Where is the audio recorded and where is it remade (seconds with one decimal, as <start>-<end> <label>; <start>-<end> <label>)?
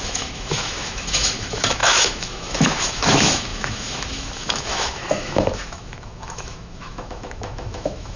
0.0-8.2 remade